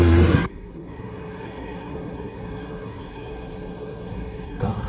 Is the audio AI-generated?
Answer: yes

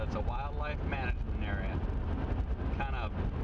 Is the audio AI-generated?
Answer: no